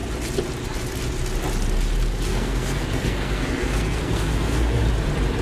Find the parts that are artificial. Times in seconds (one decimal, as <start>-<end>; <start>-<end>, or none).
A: 2.3-4.8